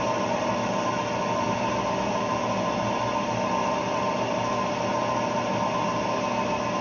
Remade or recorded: recorded